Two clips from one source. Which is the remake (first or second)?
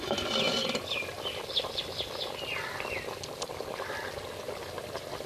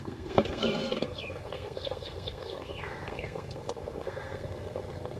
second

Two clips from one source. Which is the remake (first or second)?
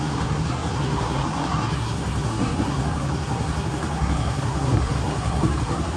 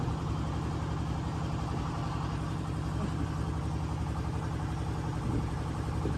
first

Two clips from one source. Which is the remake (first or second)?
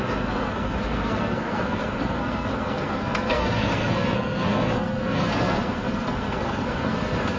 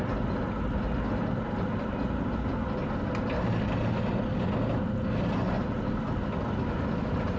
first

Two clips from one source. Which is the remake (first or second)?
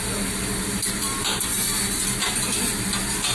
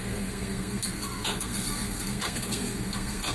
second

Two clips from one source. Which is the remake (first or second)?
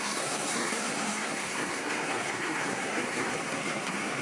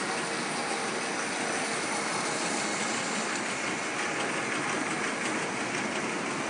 first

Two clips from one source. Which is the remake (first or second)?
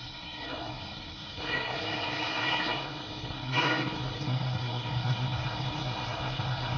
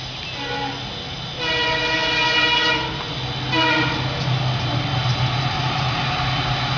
first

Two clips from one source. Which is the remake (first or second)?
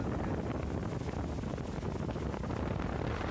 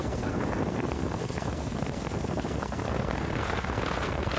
second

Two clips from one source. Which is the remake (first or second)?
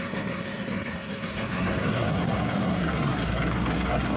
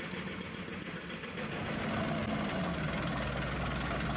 first